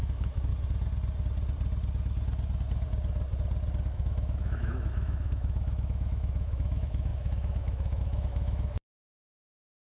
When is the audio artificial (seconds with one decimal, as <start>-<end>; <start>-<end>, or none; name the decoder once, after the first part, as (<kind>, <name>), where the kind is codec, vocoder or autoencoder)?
0.0-0.5 (autoencoder, DAC-VAE); 3.9-9.8